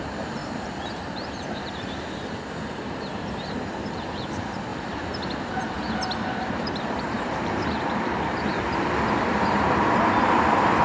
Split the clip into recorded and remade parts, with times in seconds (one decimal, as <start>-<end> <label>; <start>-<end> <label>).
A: 0.0-4.7 remade; 4.7-6.3 recorded; 6.3-8.5 remade; 8.5-9.3 recorded; 9.3-10.8 remade

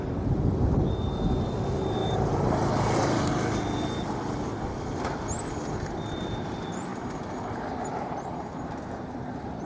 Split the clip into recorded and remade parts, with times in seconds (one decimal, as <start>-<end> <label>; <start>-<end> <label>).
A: 0.0-2.0 recorded; 2.0-3.5 remade; 3.5-6.9 recorded; 6.9-9.7 remade